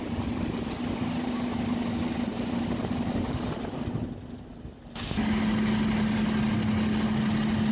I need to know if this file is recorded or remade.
recorded